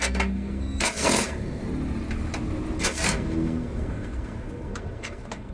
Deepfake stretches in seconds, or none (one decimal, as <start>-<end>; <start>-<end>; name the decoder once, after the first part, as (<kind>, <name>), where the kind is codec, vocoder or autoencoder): 0.0-1.6 (codec, SNAC); 2.8-5.5